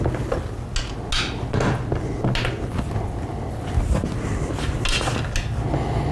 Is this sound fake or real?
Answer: real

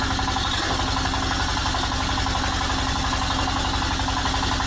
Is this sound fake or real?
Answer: real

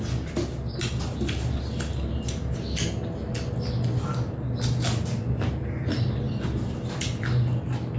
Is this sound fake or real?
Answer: real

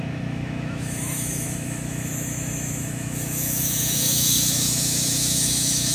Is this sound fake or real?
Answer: fake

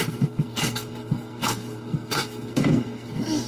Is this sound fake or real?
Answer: fake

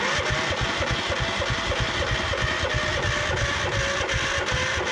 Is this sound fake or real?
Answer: real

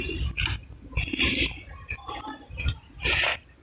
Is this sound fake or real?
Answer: real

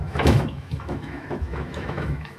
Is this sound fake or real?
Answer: fake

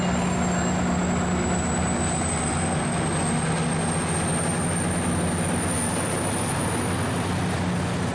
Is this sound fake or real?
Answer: real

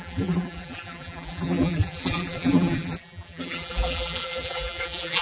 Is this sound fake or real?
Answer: fake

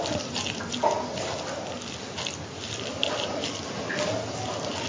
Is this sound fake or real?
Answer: real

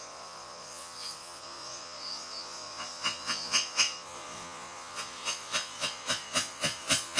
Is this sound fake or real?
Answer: fake